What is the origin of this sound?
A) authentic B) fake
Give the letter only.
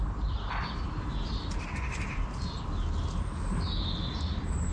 A